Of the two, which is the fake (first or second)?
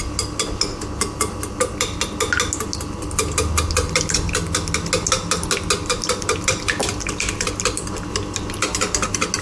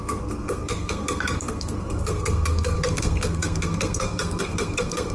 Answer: second